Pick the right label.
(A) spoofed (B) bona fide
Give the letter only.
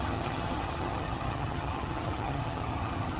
A